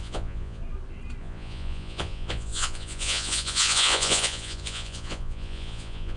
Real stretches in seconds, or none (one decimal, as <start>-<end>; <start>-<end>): 0.6-1.2